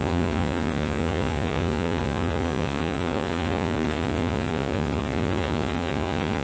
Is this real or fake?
fake